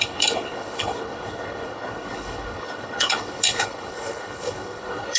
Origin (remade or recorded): remade